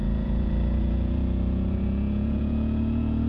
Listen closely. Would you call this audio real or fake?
fake